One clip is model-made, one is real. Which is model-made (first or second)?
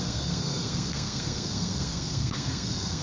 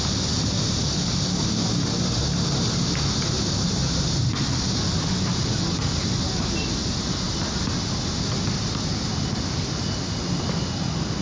first